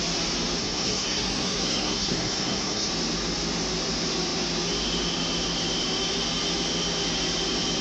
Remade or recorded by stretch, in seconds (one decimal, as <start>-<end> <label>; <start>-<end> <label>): 0.0-0.6 recorded; 0.6-2.9 remade; 2.9-7.8 recorded